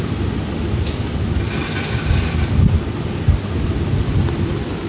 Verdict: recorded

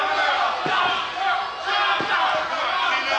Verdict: recorded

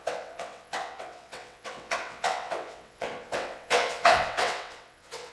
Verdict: remade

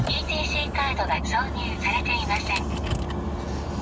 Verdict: recorded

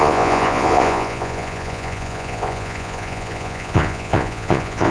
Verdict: remade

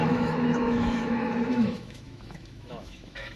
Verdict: remade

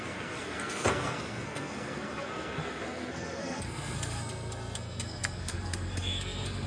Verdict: remade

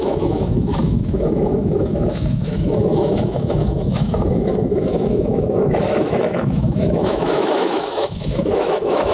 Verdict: remade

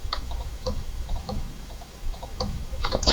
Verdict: remade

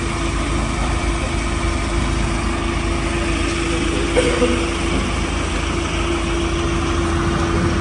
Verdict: recorded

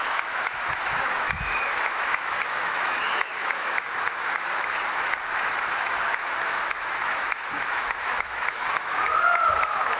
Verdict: remade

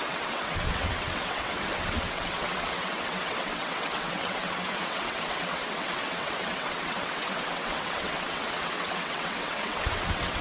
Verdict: remade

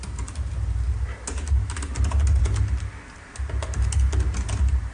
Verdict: recorded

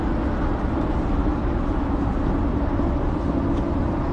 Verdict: recorded